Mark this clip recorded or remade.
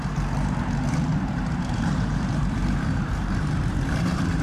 remade